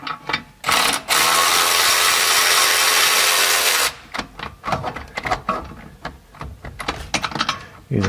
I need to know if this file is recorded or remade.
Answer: recorded